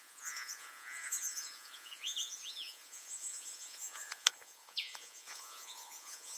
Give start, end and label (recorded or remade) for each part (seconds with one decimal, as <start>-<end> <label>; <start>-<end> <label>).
0.0-6.4 remade